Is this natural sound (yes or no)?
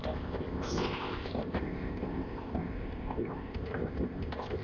no